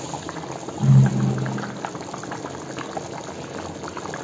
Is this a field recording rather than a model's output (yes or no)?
yes